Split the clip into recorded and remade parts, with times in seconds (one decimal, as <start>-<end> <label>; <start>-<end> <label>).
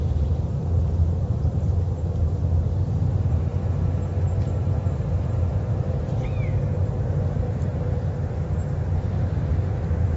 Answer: 0.0-3.5 remade; 3.5-4.4 recorded; 4.4-6.7 remade; 6.7-7.4 recorded; 7.4-10.2 remade